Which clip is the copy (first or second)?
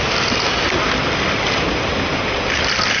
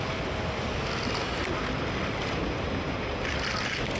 first